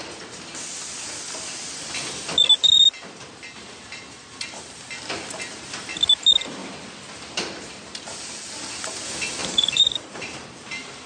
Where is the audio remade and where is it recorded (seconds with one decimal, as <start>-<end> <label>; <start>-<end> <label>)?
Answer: 0.0-9.4 recorded; 9.4-11.1 remade